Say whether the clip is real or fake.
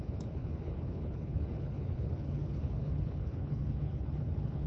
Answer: fake